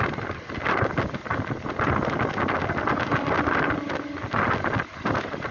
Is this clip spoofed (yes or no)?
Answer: no